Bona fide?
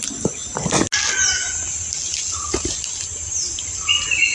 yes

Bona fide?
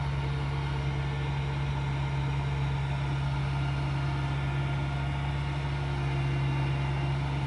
yes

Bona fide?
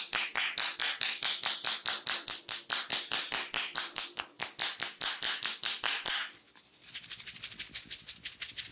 yes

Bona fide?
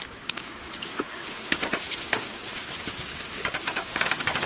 no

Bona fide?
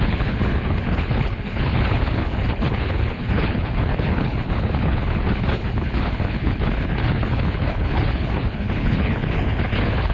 no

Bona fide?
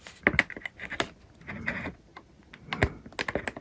yes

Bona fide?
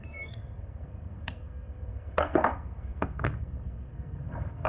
no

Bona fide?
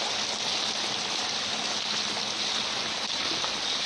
yes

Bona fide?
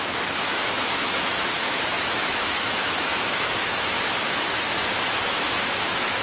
no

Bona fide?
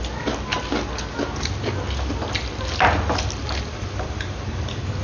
yes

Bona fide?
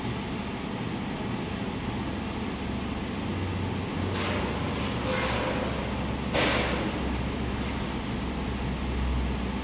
yes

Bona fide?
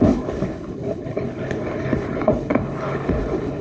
no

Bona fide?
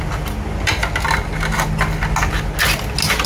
yes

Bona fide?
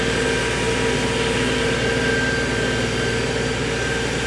yes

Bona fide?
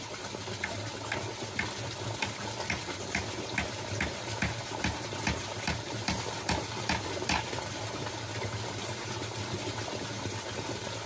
yes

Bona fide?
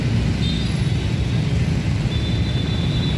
yes